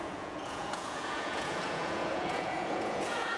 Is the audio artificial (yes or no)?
yes